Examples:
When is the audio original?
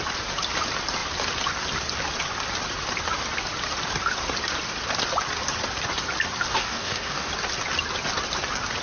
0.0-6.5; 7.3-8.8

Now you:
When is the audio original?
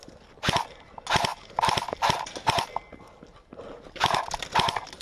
0.0-5.0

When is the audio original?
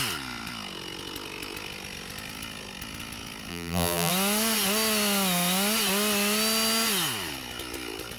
0.0-3.5; 4.1-8.2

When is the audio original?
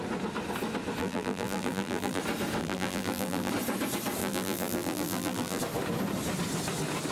0.0-1.0; 2.2-2.6; 3.5-4.2; 5.6-7.1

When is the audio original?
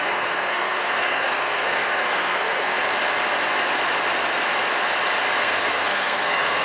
2.8-5.4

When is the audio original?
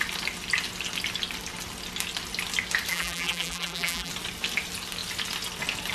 0.0-2.9; 4.1-5.9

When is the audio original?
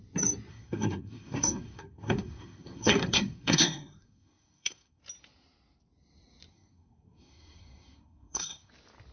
0.0-0.5; 5.0-6.5; 8.7-9.1